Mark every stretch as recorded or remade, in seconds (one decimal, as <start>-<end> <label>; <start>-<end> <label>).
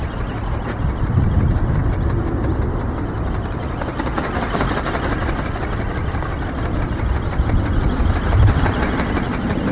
0.0-9.7 recorded